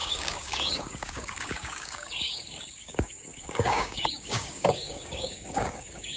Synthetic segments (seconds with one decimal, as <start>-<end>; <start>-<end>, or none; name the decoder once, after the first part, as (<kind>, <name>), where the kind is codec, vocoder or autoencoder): 0.0-6.2 (codec, DAC)